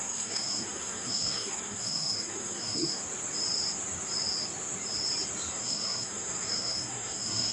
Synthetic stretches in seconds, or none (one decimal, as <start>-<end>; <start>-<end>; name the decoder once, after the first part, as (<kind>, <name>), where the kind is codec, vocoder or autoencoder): 0.0-3.0 (codec, SNAC); 5.5-7.5